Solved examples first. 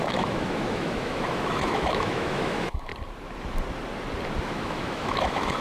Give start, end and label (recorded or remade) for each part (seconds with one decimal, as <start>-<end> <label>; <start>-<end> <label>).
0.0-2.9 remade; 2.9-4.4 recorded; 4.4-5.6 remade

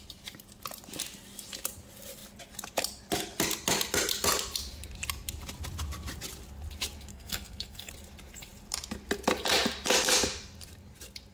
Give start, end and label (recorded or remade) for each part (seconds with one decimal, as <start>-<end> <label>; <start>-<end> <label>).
0.0-7.1 recorded; 7.1-7.9 remade; 7.9-11.3 recorded

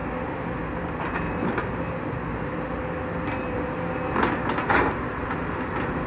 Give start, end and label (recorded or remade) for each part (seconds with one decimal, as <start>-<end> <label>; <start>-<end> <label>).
0.0-6.1 recorded